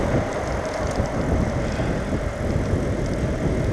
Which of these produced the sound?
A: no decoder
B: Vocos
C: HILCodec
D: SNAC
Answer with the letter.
A